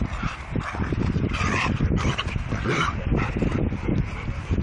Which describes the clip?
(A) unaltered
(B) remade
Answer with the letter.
A